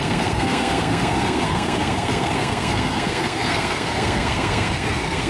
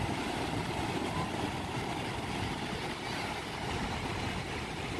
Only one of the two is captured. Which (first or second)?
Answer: second